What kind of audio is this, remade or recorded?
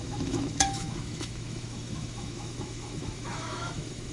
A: remade